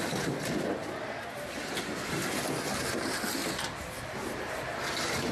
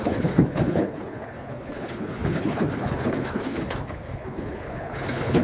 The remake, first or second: second